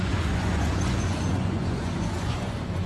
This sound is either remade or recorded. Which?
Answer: remade